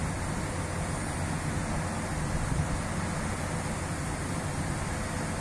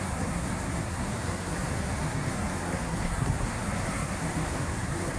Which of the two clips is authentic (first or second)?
first